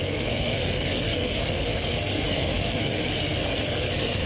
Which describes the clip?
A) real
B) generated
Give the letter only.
B